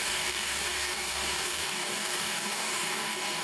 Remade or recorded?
remade